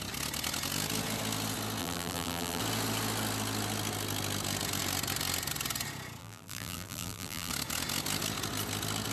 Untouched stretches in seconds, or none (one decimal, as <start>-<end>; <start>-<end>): 0.0-1.8; 2.6-6.2; 7.5-9.1